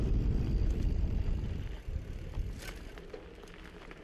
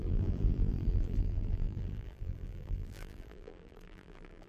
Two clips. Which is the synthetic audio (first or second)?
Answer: second